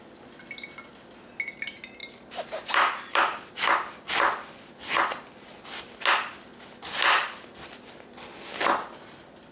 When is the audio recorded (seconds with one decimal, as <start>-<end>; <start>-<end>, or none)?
0.0-2.0; 4.1-9.5